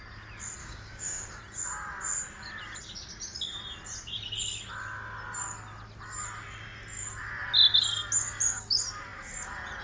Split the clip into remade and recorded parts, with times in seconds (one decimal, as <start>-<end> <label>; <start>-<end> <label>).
0.0-0.6 recorded; 0.6-1.4 remade; 1.4-9.8 recorded